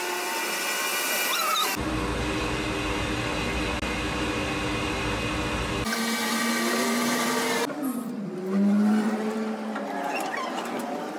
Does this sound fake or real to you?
real